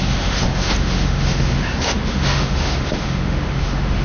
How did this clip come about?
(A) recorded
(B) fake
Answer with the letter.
B